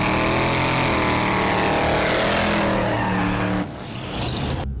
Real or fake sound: real